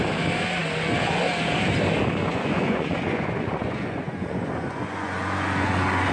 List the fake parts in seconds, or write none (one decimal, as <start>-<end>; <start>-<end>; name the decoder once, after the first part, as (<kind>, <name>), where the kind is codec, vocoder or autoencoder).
2.2-6.1 (vocoder, Vocos)